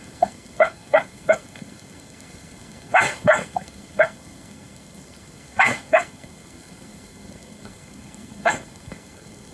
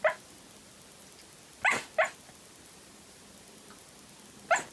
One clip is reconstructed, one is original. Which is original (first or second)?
second